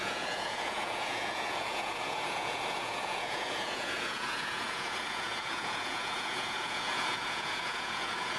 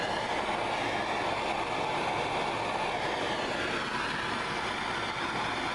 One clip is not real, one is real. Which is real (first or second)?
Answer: second